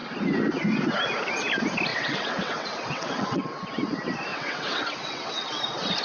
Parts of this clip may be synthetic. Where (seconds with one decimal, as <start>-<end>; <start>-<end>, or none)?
1.9-3.6; 4.3-5.6